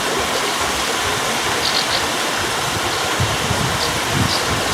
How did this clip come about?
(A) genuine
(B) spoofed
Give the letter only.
A